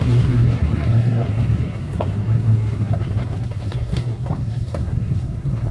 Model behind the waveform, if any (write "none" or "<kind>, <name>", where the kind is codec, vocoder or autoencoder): codec, SNAC